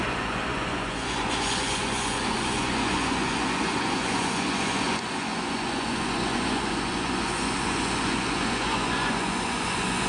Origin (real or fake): fake